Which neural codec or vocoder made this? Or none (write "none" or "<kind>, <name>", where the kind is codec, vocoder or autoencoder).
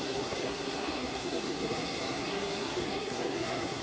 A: codec, SNAC